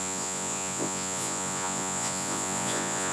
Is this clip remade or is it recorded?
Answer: remade